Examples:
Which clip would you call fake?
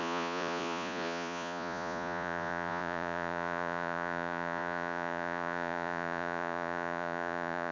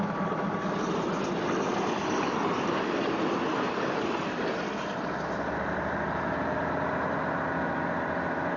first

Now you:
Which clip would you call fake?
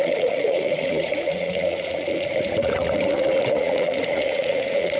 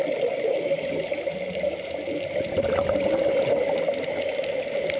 first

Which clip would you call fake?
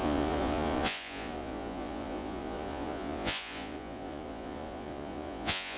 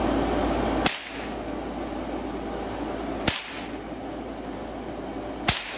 first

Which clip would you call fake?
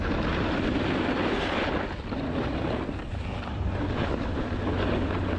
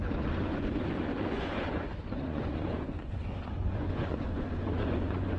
second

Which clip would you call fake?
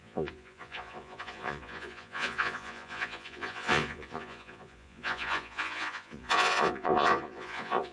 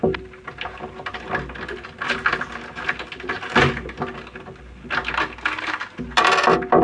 first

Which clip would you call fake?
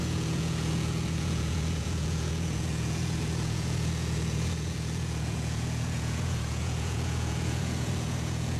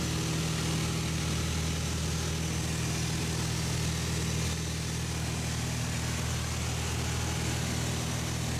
first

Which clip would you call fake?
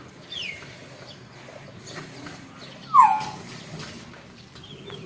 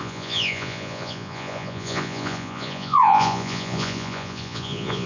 second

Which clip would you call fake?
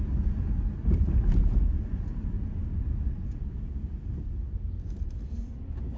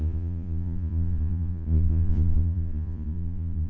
second